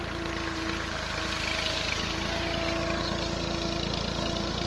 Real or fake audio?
real